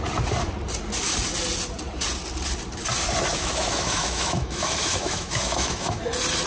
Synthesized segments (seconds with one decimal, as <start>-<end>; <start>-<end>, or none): 3.3-6.0